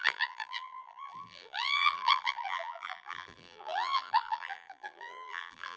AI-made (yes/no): yes